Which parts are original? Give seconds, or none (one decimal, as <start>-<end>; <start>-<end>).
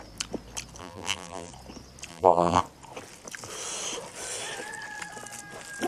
0.0-0.8; 1.5-2.1; 2.6-5.9